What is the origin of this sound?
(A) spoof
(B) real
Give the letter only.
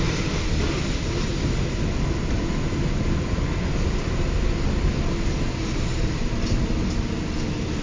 B